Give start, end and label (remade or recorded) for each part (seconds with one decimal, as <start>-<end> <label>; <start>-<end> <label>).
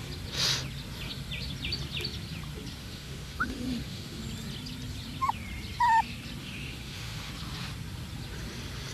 0.0-2.8 recorded; 2.8-4.2 remade; 4.2-6.4 recorded; 6.4-7.3 remade; 7.3-8.9 recorded